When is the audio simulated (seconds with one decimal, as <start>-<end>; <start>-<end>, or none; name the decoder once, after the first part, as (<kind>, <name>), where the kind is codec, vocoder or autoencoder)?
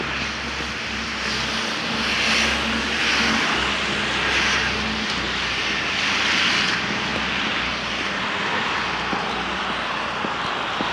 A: none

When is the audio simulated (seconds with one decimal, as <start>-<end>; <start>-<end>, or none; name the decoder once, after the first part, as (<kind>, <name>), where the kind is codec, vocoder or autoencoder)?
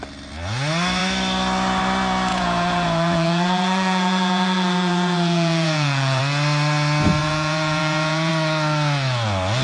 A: 2.3-6.2 (vocoder, Vocos); 7.2-8.3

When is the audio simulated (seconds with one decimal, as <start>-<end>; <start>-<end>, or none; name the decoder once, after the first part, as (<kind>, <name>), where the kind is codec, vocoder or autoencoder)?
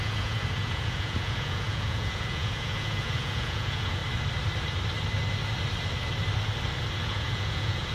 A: 0.0-4.0 (vocoder, Vocos); 7.0-7.9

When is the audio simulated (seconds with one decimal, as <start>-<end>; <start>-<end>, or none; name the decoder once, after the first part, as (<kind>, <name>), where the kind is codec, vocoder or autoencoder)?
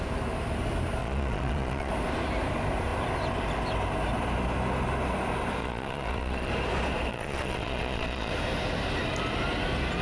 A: 1.0-1.9 (vocoder, Vocos); 5.6-6.5; 7.1-8.3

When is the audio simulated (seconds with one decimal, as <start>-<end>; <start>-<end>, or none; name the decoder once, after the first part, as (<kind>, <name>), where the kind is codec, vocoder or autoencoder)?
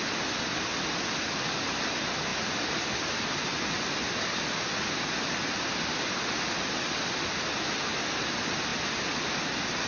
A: none